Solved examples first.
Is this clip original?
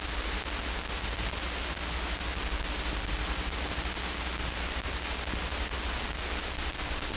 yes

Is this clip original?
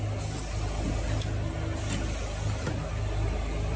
yes